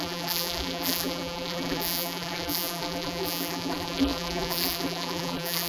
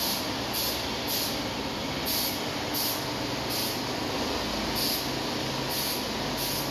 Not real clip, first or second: first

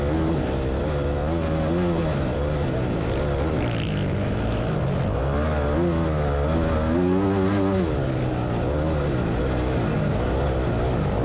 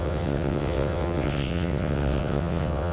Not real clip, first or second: second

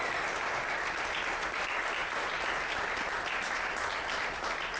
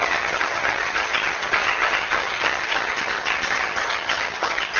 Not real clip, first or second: second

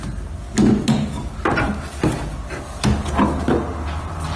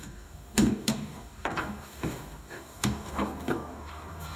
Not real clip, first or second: second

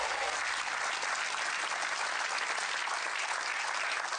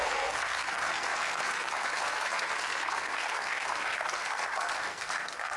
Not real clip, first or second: second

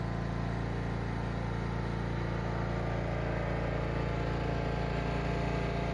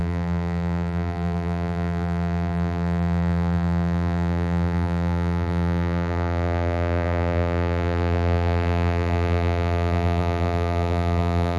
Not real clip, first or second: second